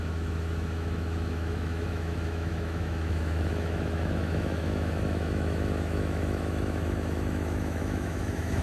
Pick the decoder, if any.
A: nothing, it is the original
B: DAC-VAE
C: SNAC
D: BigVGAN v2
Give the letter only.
B